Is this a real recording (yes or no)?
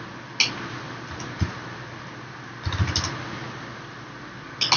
yes